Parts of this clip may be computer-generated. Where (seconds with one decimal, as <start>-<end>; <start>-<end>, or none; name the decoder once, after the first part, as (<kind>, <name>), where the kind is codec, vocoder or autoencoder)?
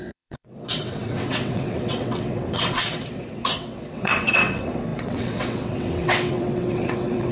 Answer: 0.0-7.3 (vocoder, WaveNeXt)